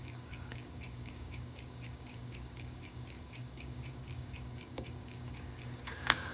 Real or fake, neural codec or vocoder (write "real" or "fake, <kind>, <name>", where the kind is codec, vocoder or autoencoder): fake, codec, DAC